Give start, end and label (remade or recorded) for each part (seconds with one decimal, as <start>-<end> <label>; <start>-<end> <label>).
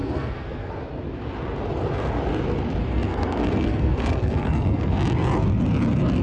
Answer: 0.0-0.7 remade; 0.7-2.8 recorded; 2.8-4.9 remade; 4.9-6.2 recorded